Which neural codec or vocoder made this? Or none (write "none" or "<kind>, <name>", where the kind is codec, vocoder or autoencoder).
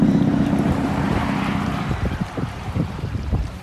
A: vocoder, BigVGAN v2